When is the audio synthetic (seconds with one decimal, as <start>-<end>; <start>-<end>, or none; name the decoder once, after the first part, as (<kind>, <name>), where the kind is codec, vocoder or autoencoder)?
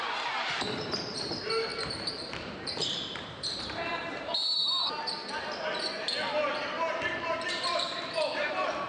0.0-4.6 (vocoder, BigVGAN v2); 6.9-8.9